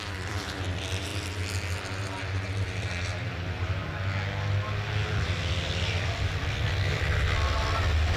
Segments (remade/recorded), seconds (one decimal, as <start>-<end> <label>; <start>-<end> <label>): 0.0-1.1 remade; 1.1-2.2 recorded; 2.2-3.8 remade; 3.8-5.1 recorded; 5.1-8.2 remade